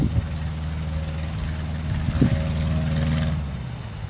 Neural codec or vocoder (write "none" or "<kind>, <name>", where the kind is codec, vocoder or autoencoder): none